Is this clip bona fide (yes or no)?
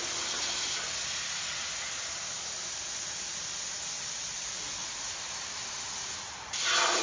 yes